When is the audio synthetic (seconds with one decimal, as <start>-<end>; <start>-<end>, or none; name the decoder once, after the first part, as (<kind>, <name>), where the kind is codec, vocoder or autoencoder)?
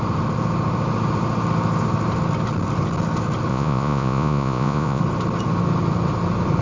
3.5-5.0 (vocoder, Vocos)